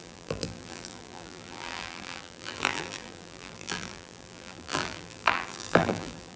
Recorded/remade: remade